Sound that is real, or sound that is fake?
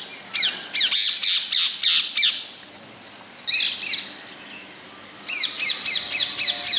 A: real